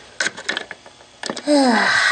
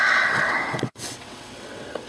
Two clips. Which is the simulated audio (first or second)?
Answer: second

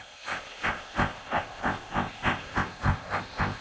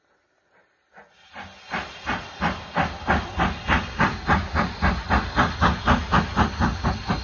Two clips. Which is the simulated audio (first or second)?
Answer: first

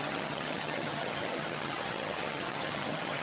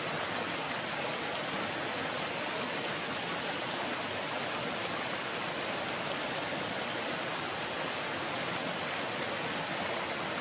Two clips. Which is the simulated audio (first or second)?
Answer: first